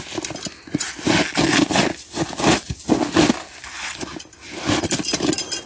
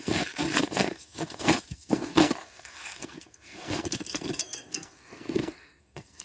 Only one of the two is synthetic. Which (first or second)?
second